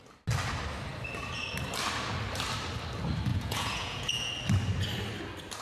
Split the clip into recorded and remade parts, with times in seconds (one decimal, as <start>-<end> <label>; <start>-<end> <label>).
0.0-3.3 recorded; 3.3-4.3 remade; 4.3-5.6 recorded